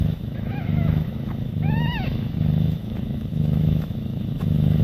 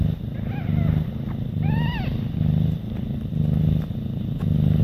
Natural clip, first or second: second